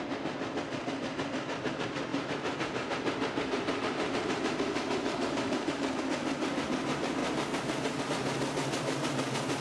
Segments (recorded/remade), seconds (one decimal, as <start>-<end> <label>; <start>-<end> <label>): 0.0-2.1 recorded; 2.1-6.0 remade; 6.0-7.2 recorded; 7.2-8.0 remade; 8.0-9.6 recorded